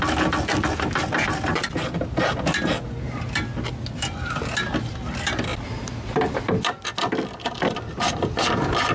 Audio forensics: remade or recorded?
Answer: recorded